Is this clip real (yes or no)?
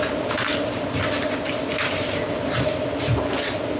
yes